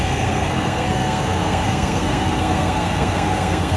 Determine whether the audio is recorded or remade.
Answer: remade